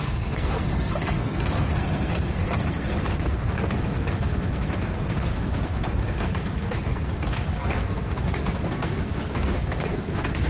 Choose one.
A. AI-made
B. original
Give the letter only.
A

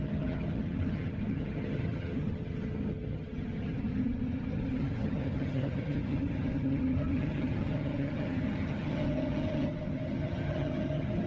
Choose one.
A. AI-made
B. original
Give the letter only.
A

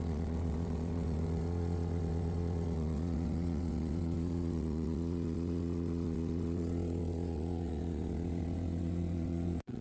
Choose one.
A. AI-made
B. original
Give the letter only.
A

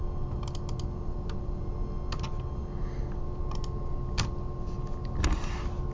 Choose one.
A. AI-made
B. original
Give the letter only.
B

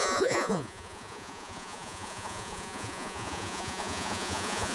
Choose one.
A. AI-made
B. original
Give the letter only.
A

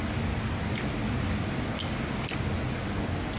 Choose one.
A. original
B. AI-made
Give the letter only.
A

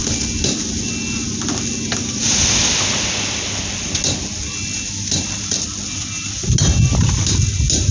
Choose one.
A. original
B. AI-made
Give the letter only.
A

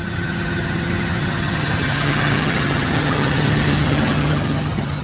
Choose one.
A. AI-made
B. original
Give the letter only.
A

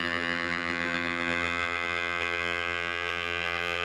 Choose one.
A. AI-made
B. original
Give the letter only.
A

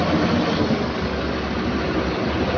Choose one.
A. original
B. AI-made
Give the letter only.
A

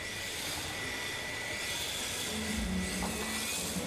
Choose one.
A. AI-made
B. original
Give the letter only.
B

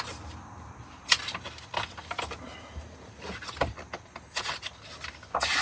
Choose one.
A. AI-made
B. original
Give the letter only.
B